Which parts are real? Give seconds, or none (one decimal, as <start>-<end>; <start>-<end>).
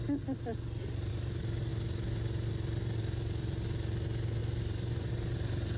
0.0-4.4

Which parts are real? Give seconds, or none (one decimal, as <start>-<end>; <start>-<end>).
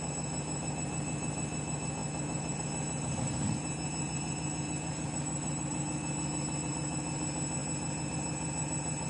0.0-9.1